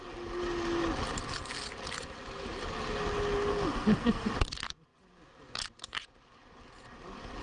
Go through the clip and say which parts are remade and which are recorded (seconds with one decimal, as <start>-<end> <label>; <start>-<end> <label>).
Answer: 0.0-3.5 recorded; 3.5-4.3 remade; 4.3-7.4 recorded